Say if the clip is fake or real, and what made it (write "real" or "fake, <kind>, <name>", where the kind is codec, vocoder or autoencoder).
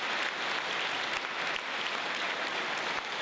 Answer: real